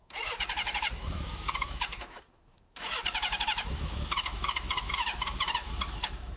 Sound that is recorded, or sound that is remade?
remade